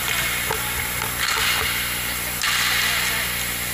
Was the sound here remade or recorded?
recorded